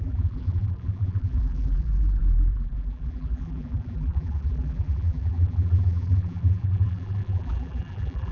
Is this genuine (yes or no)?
no